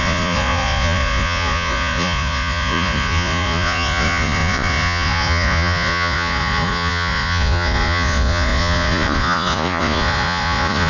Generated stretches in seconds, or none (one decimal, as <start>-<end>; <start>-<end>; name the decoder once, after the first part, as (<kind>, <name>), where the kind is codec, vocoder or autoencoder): 0.0-10.9 (vocoder, Vocos)